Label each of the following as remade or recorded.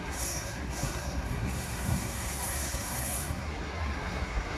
remade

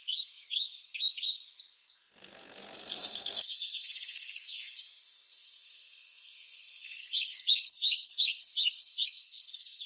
remade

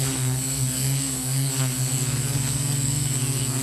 remade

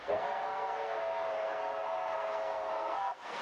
remade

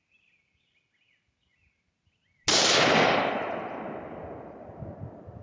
recorded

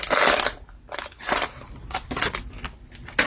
recorded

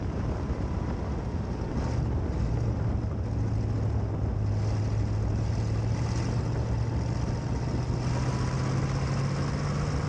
recorded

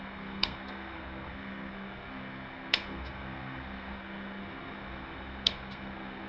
remade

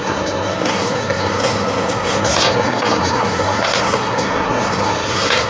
remade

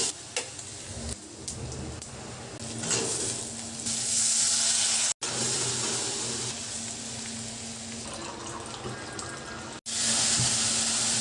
recorded